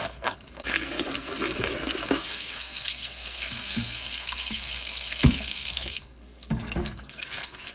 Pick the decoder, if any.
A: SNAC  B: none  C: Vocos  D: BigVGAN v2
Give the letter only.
A